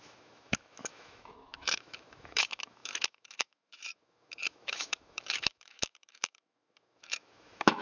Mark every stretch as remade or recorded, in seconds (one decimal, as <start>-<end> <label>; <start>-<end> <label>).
0.0-7.8 remade